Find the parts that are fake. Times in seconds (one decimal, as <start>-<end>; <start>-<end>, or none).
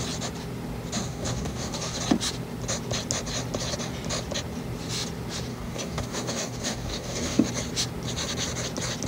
1.1-2.0; 5.5-7.5